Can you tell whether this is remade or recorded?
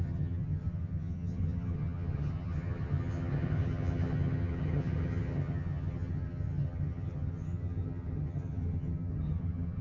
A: remade